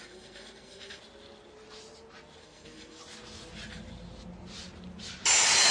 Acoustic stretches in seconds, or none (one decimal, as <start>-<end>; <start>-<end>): 1.0-2.4; 3.0-5.7